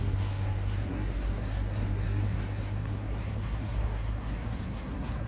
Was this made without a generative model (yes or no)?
no